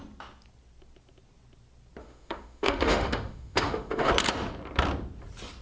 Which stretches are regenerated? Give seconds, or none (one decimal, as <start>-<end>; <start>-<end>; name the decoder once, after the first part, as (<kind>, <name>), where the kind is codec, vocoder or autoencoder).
2.0-4.1 (autoencoder, DAC-VAE)